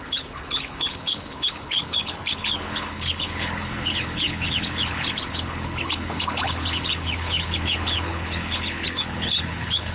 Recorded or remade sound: remade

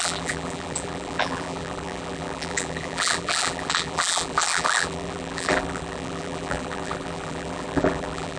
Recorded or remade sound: remade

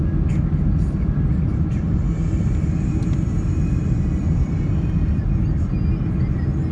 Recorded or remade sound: recorded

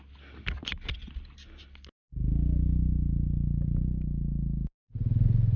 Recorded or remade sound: recorded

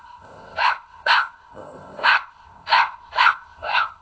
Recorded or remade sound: remade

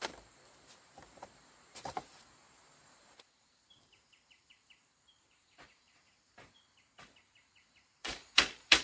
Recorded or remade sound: remade